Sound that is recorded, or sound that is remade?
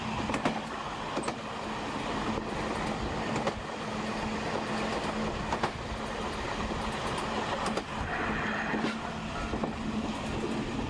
recorded